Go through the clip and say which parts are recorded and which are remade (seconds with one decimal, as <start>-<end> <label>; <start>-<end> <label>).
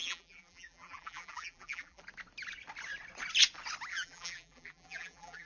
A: 0.0-2.0 remade; 2.0-3.9 recorded; 3.9-5.5 remade